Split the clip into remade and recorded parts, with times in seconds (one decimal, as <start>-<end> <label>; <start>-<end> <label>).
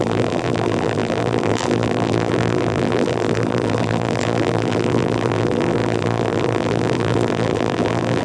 0.0-8.2 remade